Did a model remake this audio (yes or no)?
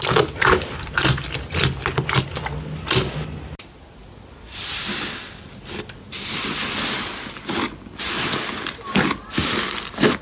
no